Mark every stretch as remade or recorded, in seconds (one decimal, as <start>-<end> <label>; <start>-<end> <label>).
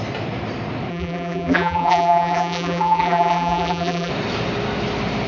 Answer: 0.0-0.9 recorded; 0.9-4.1 remade; 4.1-5.3 recorded